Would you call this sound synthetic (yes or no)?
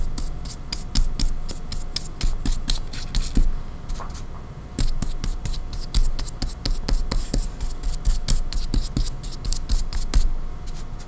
no